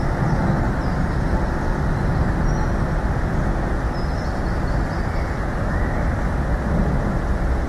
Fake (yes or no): no